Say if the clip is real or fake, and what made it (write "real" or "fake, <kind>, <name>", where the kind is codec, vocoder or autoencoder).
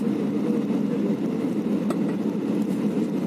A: real